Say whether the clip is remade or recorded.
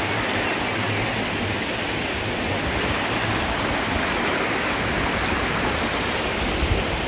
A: recorded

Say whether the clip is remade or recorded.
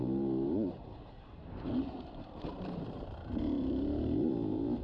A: remade